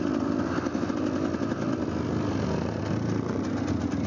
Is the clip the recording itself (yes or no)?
yes